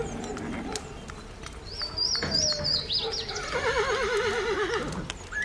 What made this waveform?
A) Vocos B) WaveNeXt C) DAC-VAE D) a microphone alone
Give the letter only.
D